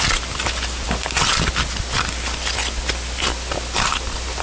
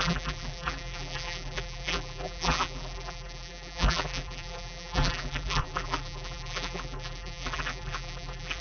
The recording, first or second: first